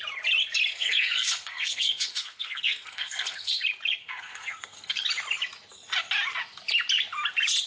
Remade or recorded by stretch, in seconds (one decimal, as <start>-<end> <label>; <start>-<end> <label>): 0.0-0.7 recorded; 0.7-3.5 remade; 3.5-4.0 recorded; 4.0-5.0 remade; 5.0-7.7 recorded